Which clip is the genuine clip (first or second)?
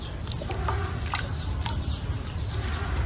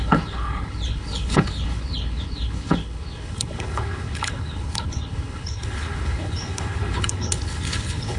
first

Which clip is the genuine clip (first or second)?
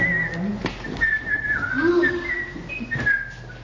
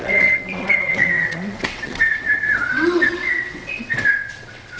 first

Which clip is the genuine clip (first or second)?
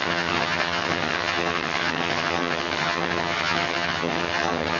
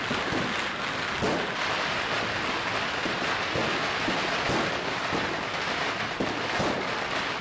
second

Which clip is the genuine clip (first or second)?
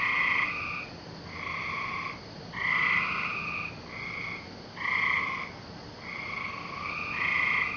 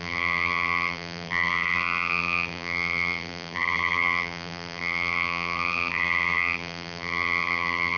first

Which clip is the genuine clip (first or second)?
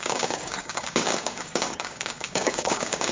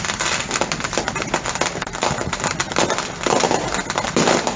second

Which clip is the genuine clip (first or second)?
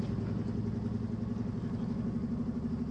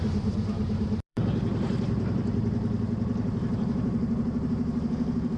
first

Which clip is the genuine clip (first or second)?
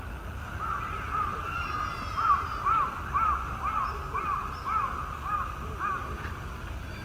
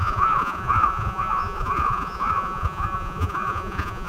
first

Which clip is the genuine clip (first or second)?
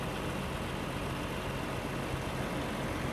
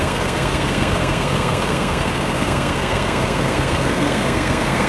first